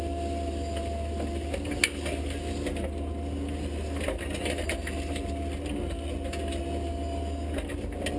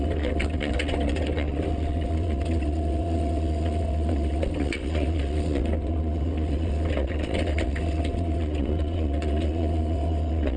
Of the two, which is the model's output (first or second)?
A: second